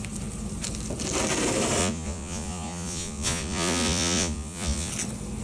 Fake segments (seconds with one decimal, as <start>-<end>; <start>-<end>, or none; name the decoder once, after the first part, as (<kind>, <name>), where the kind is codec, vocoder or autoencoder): 1.8-4.9 (vocoder, Vocos)